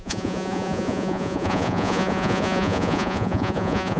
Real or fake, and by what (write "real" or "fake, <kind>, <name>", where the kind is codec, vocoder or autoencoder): fake, vocoder, Vocos